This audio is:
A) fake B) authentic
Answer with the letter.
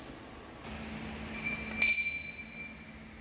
B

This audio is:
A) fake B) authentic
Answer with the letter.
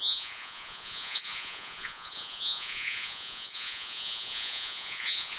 A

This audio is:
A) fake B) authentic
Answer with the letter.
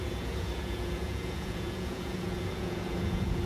A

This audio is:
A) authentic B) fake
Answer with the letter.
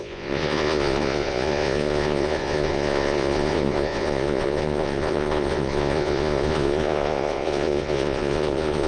B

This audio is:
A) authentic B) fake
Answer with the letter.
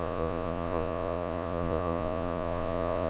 B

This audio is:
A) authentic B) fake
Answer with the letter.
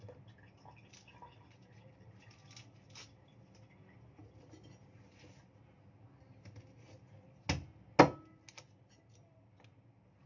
A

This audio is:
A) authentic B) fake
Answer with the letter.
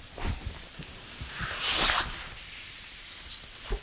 A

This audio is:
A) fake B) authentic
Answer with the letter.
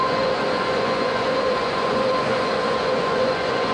A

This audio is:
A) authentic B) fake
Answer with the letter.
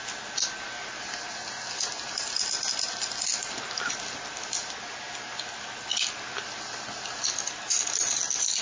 A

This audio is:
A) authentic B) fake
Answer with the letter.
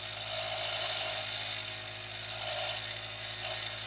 A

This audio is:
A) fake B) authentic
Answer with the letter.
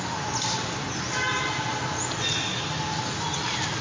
B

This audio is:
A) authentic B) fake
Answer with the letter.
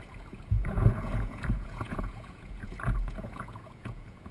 B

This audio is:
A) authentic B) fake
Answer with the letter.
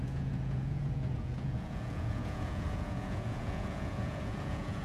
B